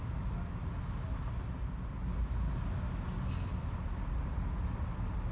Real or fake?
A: real